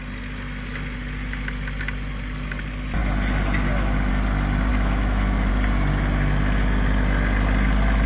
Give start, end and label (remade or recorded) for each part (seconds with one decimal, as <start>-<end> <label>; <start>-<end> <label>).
0.0-4.7 recorded; 4.7-5.5 remade; 5.5-8.1 recorded

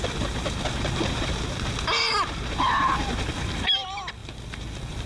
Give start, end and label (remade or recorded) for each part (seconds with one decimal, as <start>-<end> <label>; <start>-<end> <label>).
0.0-5.1 recorded

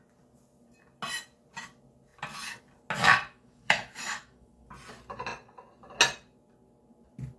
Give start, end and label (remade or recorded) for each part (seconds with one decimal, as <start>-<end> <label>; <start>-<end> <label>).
0.0-3.0 recorded; 3.0-4.7 remade; 4.7-7.4 recorded